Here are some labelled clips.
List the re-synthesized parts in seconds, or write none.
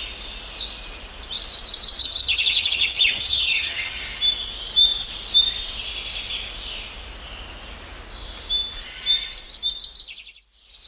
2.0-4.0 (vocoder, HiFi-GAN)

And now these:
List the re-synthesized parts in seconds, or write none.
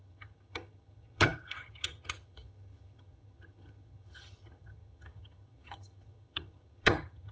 0.0-7.3 (vocoder, HiFi-GAN)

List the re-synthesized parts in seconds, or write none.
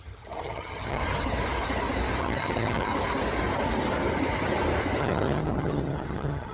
0.0-1.0 (vocoder, HiFi-GAN); 2.2-2.9; 5.0-6.5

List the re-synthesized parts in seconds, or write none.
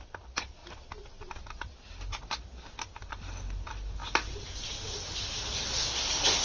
none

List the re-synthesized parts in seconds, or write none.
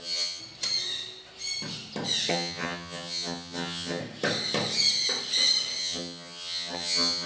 0.0-0.4 (vocoder, HiFi-GAN); 2.3-4.0; 5.8-7.3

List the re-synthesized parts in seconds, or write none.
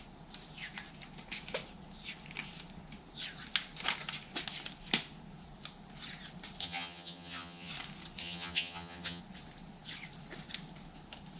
6.6-7.7 (vocoder, HiFi-GAN); 8.2-9.2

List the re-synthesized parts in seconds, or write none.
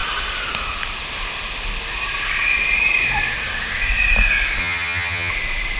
4.6-5.3 (vocoder, HiFi-GAN)